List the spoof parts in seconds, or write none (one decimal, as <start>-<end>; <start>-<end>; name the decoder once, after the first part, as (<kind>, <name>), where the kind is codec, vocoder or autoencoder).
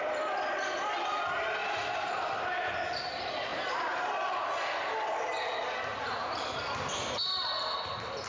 1.6-2.7 (vocoder, BigVGAN v2); 3.5-4.1; 6.2-6.8